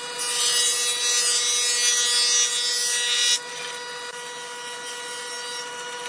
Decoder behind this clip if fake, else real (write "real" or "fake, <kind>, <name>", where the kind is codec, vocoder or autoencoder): real